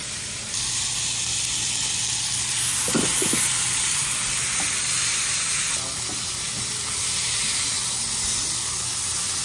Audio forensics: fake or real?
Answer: real